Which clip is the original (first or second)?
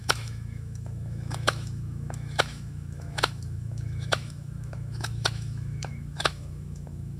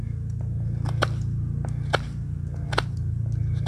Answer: second